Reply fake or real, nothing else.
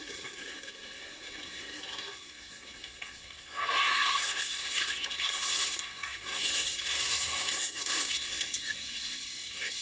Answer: fake